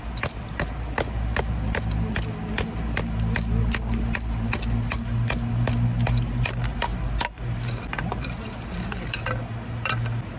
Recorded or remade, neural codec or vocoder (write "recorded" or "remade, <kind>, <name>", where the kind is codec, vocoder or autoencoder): recorded